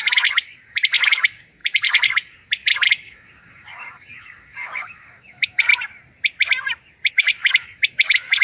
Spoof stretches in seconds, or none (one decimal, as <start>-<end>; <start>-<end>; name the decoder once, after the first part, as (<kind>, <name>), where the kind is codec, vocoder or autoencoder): 0.0-5.7 (codec, DAC); 7.1-8.4

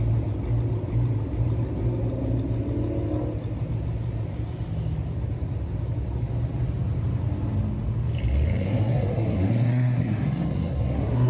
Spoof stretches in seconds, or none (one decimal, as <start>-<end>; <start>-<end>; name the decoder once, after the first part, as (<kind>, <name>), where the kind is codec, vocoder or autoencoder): 8.6-11.3 (codec, SNAC)